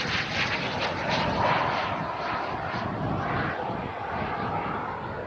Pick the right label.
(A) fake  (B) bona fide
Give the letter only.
B